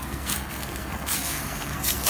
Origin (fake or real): fake